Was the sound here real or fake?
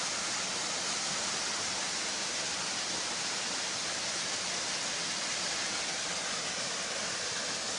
real